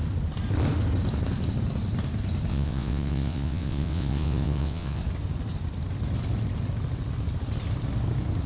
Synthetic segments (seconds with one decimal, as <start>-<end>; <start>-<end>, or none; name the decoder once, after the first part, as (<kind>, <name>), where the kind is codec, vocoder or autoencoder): 2.5-5.0 (vocoder, WaveNeXt)